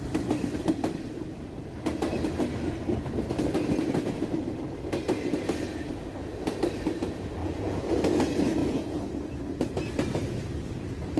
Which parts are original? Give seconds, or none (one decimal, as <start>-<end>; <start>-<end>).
0.0-7.4; 8.0-8.6; 9.1-11.2